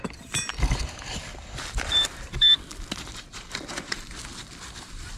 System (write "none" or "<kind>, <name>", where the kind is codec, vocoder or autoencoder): vocoder, BigVGAN v2